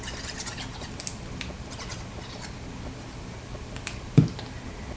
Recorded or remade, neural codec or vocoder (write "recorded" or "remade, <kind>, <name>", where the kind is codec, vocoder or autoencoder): recorded